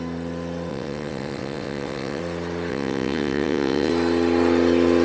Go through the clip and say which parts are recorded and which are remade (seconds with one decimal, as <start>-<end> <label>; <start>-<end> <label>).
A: 0.0-0.7 recorded; 0.7-2.2 remade; 2.2-2.7 recorded; 2.7-3.9 remade; 3.9-5.0 recorded